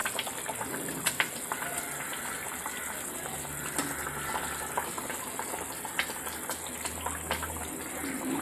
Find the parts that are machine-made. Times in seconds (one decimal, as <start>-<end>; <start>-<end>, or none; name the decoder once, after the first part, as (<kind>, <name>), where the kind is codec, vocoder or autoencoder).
none